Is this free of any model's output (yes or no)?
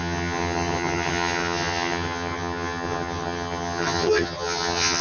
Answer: no